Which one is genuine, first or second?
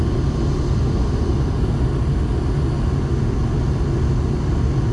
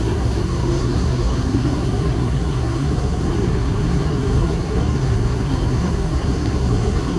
first